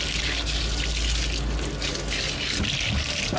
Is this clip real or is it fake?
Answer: real